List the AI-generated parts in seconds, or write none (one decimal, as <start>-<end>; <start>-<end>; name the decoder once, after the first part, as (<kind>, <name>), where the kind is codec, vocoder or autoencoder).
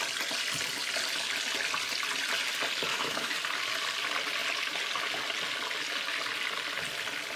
2.9-3.4 (autoencoder, DAC-VAE)